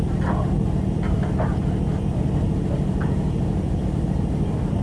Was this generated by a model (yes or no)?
no